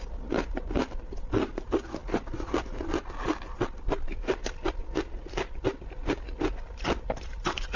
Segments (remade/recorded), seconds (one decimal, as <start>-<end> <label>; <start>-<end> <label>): 0.0-7.8 recorded